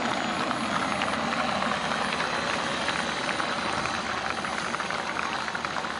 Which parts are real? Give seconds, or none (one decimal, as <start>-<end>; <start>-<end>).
0.0-6.0